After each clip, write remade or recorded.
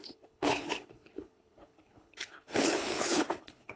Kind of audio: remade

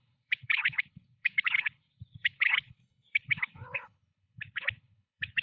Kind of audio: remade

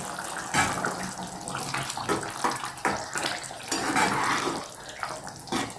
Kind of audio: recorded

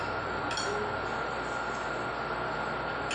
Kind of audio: recorded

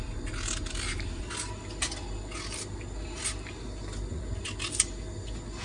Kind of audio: recorded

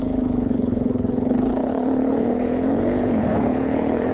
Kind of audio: remade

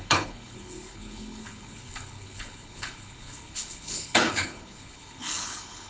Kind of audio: remade